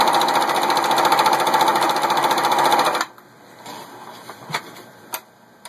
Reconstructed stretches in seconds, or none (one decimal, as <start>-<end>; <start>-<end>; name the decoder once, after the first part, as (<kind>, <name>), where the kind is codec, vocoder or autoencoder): 1.7-5.1 (vocoder, BigVGAN v2)